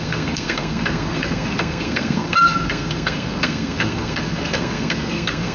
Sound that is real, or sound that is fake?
fake